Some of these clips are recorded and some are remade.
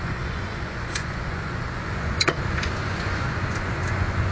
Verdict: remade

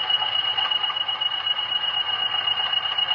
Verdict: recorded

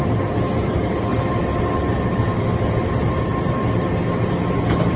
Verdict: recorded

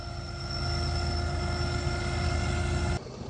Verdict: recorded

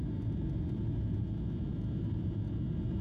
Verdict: recorded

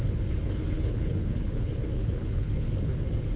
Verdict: remade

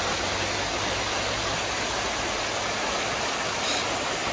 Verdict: recorded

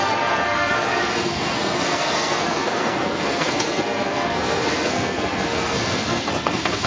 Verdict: remade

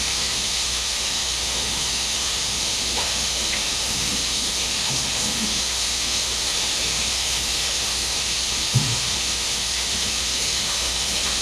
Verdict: remade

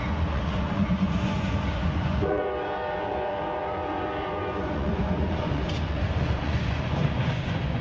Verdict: remade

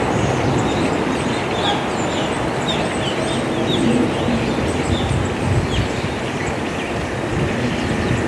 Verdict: recorded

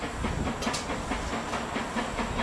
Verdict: recorded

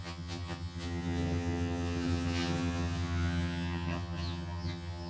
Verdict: remade